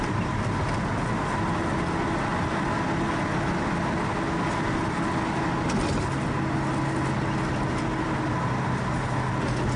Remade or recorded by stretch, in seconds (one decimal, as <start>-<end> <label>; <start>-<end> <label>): 0.0-9.8 recorded